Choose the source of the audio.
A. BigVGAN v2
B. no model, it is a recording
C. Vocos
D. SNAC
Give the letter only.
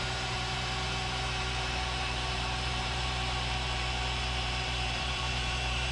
A